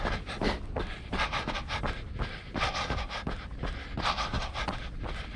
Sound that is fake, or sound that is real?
real